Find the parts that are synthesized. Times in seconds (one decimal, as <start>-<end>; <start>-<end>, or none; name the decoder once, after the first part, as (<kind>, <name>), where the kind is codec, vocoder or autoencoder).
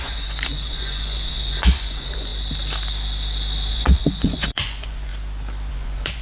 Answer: 0.0-2.3 (vocoder, Vocos); 3.7-5.1; 5.7-6.2